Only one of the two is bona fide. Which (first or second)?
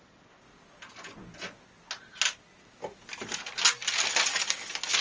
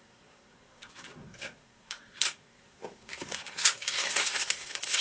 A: first